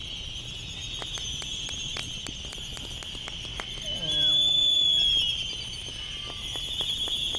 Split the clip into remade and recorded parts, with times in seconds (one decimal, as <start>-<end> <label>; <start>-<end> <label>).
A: 0.0-7.4 recorded